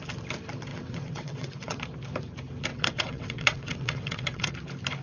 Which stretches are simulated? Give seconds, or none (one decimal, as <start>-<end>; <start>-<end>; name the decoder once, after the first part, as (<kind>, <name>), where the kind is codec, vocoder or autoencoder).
0.7-1.8 (vocoder, WaveNeXt); 2.7-4.5

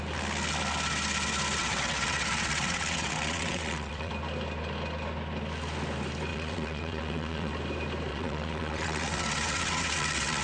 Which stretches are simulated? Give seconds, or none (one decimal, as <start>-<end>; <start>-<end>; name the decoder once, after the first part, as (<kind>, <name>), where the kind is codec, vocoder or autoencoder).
1.6-4.1 (vocoder, WaveNeXt); 6.3-7.5; 8.1-10.4